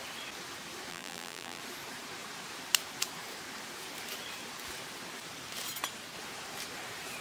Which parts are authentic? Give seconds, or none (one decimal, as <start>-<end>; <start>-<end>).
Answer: 0.0-0.9; 1.6-7.2